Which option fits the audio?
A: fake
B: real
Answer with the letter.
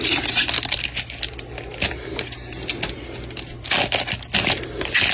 B